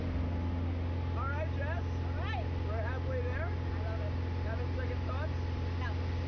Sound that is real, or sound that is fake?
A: real